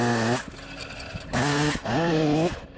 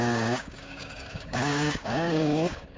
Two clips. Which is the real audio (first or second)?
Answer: first